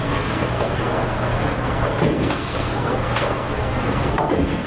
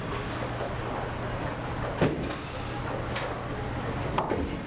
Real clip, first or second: second